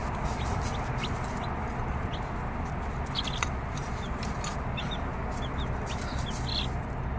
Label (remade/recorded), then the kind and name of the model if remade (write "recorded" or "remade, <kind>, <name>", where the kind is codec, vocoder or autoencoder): recorded